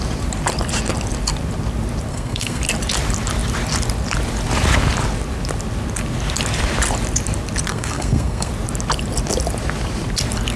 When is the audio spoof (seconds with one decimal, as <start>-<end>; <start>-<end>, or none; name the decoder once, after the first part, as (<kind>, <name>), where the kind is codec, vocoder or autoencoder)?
2.1-2.6 (codec, SNAC); 7.7-8.5

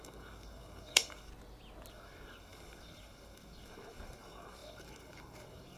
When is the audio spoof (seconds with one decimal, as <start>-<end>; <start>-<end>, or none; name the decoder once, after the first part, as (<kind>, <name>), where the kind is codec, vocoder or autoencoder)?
0.0-1.3 (codec, DAC); 1.9-5.8

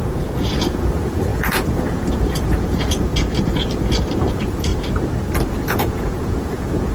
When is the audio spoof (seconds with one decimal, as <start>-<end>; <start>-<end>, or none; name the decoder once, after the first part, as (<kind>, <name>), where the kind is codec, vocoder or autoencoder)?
0.0-3.1 (vocoder, Vocos); 4.3-4.7; 5.5-6.9

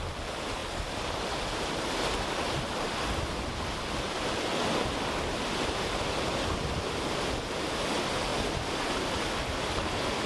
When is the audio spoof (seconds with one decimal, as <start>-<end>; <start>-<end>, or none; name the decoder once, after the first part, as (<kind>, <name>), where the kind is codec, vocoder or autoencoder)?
none

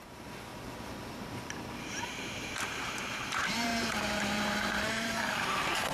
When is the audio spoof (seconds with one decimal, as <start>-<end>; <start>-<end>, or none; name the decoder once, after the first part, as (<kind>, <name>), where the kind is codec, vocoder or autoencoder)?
0.0-0.5 (vocoder, BigVGAN v2); 1.8-5.9

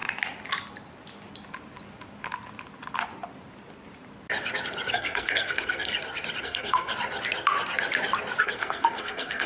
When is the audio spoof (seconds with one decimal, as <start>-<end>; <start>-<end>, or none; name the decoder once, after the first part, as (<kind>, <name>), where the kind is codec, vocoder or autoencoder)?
4.9-5.9 (codec, SNAC); 6.4-6.9; 8.4-9.5

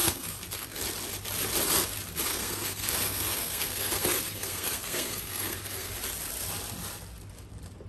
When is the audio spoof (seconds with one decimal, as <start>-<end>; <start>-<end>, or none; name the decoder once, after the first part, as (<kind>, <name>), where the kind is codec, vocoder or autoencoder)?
0.0-0.8 (codec, SNAC); 2.3-5.9

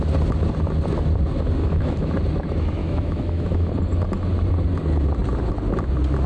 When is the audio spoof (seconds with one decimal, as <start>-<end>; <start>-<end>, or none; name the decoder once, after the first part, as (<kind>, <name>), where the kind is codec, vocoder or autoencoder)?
1.6-2.1 (autoencoder, DAC-VAE); 2.8-3.7